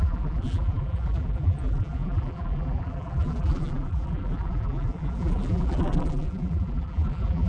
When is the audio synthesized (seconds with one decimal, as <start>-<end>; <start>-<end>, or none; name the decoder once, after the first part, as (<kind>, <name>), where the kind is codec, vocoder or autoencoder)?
0.0-7.5 (vocoder, BigVGAN v2)